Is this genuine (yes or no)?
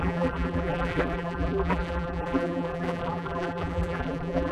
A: no